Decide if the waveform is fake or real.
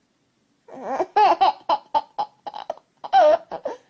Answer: real